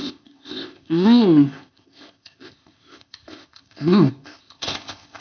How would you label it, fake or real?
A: fake